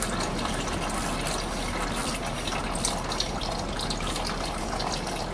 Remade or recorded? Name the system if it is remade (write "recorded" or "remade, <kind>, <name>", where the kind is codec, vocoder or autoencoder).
recorded